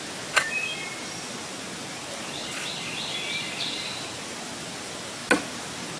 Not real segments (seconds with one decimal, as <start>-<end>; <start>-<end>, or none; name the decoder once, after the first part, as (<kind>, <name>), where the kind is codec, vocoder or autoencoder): none